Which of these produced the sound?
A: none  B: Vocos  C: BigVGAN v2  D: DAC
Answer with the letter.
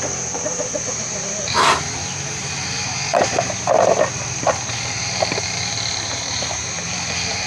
C